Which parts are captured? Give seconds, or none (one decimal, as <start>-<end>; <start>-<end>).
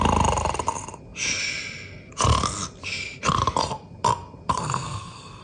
0.0-4.5